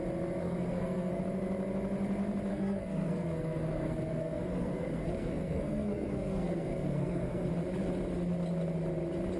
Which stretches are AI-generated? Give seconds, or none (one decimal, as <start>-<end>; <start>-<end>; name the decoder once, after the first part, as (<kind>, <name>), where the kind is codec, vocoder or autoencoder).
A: 0.4-1.2 (codec, SNAC); 2.5-7.5